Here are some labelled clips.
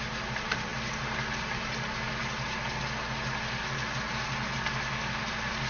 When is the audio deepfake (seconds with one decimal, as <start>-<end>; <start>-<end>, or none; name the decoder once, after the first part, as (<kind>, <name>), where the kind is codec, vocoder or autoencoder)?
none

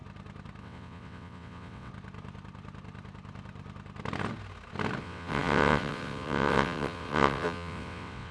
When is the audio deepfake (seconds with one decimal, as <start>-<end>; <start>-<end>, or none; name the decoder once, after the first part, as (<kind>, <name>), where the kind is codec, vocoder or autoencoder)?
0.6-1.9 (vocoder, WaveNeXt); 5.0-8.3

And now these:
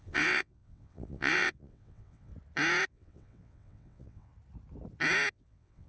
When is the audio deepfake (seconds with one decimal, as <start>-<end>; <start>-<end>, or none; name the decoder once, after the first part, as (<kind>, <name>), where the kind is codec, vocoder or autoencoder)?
0.0-2.3 (vocoder, WaveNeXt); 2.9-4.3; 5.3-5.9

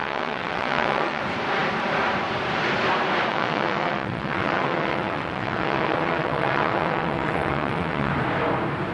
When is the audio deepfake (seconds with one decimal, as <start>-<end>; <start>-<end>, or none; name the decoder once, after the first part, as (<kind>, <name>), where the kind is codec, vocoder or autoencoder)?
0.0-1.2 (vocoder, WaveNeXt); 3.3-8.1

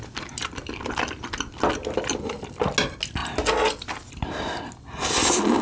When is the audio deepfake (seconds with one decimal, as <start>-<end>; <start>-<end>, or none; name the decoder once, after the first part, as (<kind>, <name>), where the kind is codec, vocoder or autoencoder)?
none

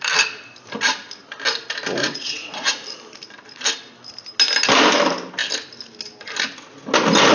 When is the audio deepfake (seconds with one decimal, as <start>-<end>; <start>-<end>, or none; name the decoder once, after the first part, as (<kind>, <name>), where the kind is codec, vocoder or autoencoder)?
2.0-2.7 (vocoder, WaveNeXt)

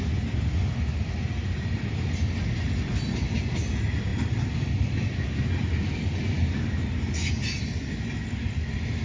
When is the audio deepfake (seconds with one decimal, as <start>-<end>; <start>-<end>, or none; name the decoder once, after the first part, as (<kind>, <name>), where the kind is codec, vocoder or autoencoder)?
none

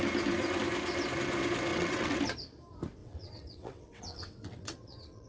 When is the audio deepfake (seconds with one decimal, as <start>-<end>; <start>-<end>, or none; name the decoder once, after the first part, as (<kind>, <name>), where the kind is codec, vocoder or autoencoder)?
1.7-2.2 (vocoder, WaveNeXt); 3.0-5.3